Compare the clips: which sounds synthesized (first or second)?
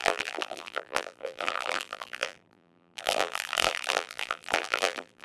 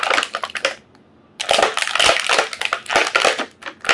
first